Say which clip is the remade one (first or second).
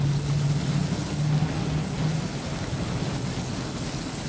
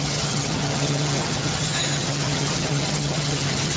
second